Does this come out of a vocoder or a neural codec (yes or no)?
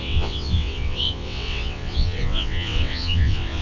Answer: yes